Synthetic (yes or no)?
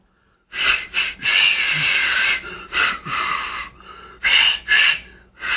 no